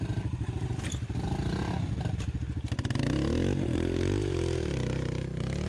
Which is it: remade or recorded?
recorded